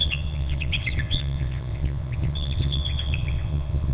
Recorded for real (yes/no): no